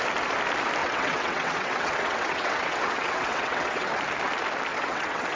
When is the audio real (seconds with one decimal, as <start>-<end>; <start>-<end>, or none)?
0.0-0.8; 4.0-4.7